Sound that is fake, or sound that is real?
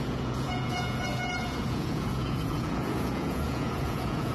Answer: fake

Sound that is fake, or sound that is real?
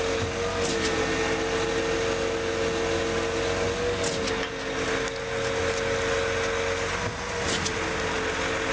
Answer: real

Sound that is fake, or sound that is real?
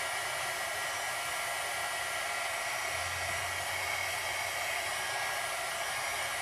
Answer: real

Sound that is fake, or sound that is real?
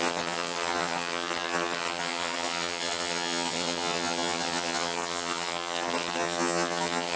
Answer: fake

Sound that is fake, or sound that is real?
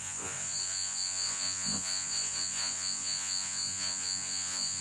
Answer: fake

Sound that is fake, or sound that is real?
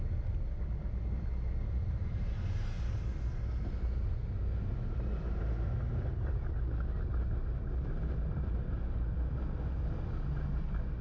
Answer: real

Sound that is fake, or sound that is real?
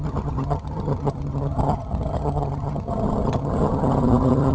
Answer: fake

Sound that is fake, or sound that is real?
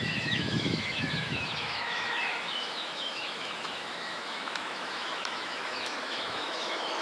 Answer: fake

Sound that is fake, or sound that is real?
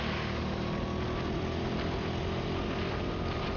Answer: real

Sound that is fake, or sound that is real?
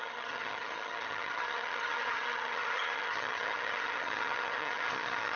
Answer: fake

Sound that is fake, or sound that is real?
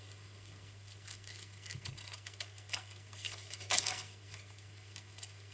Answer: fake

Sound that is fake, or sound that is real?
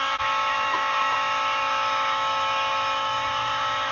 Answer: fake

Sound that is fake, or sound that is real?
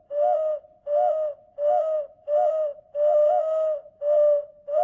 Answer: real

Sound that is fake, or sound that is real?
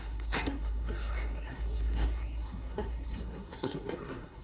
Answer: fake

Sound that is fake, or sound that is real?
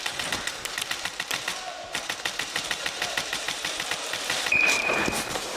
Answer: fake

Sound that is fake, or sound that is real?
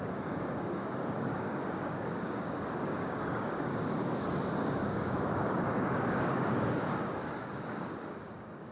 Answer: fake